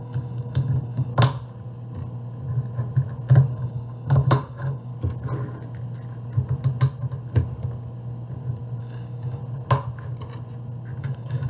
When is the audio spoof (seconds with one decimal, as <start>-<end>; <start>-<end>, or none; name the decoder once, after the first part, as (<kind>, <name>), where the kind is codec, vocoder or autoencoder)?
0.0-1.1 (codec, DAC); 3.5-4.9; 8.8-9.4; 11.0-11.5